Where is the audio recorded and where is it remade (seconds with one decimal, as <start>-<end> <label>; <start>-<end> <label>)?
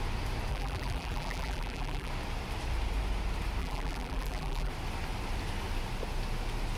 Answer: 0.0-0.5 recorded; 0.5-2.1 remade; 2.1-3.6 recorded; 3.6-4.7 remade; 4.7-6.8 recorded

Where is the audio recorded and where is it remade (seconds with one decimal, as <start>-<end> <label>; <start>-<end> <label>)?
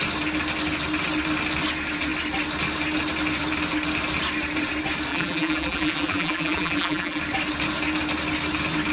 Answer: 0.0-5.1 recorded; 5.1-7.2 remade; 7.2-8.9 recorded